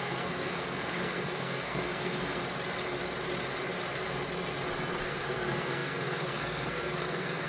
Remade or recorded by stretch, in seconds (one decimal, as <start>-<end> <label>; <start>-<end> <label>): 0.0-2.4 remade; 2.4-5.0 recorded; 5.0-7.5 remade